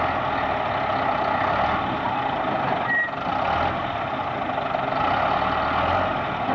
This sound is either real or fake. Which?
real